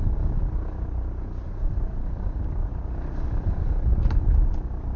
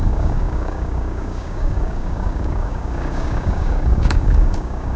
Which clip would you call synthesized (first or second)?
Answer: second